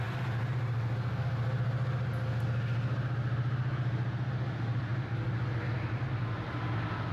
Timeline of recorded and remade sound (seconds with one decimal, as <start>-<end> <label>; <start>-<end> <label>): 0.0-7.1 recorded